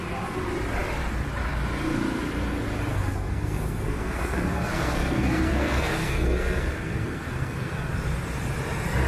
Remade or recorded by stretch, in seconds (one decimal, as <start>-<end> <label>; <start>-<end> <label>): 0.0-2.9 recorded; 2.9-7.9 remade; 7.9-9.1 recorded